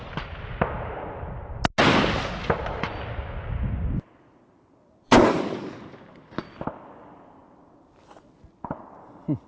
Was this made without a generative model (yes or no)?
yes